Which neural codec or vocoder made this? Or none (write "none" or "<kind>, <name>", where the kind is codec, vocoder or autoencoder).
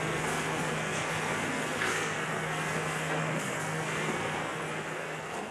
codec, SNAC